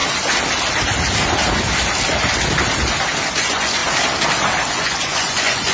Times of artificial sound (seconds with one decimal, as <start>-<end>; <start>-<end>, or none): 3.4-3.8; 4.7-5.7